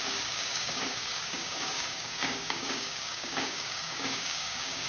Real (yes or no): no